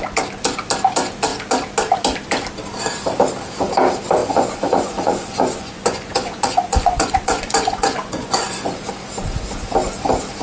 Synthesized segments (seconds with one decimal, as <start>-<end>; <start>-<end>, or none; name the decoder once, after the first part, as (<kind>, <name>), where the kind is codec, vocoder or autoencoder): 4.2-8.8 (vocoder, Vocos)